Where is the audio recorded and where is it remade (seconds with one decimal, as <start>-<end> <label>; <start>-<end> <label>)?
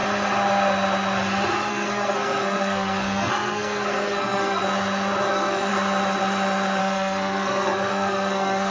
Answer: 0.0-1.7 recorded; 1.7-4.6 remade; 4.6-5.3 recorded; 5.3-5.7 remade; 5.7-6.8 recorded; 6.8-8.7 remade